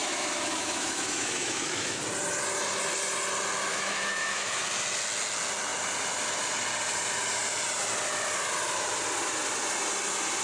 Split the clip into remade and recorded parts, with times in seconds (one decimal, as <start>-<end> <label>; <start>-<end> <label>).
0.0-2.0 remade; 2.0-3.7 recorded; 3.7-4.6 remade; 4.6-10.4 recorded